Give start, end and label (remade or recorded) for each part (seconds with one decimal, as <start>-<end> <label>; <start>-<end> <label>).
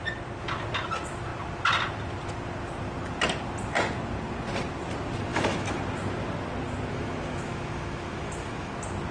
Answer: 0.0-5.3 recorded; 5.3-5.8 remade; 5.8-6.9 recorded; 6.9-8.7 remade; 8.7-9.1 recorded